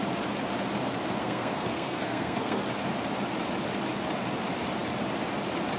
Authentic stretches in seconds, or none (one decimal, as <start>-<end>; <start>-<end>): 0.0-1.2; 2.6-5.8